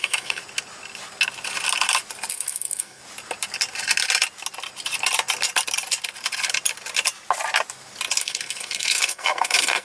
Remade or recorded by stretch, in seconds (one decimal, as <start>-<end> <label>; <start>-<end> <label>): 0.0-0.4 remade; 0.4-2.3 recorded; 2.3-3.0 remade; 3.0-8.2 recorded; 8.2-9.8 remade